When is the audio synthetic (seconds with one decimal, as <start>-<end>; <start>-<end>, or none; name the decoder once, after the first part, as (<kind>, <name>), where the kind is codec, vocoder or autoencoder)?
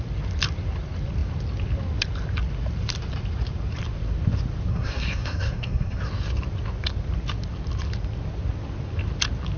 4.7-6.0 (codec, SNAC)